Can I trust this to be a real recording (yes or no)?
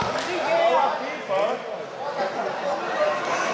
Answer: yes